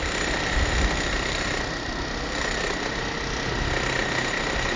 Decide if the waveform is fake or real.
real